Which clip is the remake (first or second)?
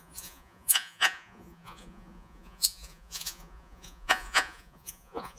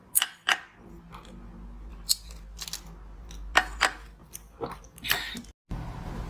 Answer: first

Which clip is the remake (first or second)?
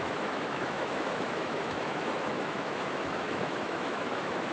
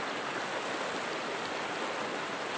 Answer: first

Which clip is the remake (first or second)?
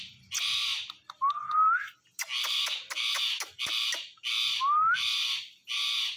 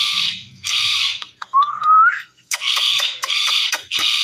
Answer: second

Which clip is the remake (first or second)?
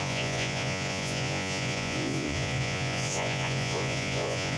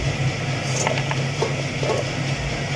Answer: first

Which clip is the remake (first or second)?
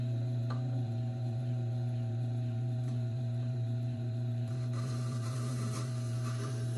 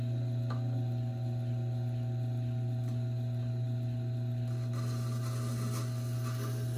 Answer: first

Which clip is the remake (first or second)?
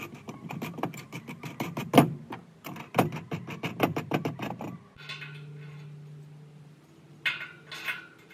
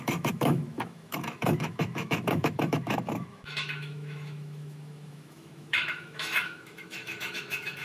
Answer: second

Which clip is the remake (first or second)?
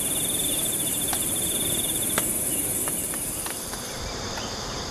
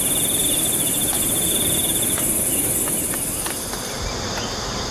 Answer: first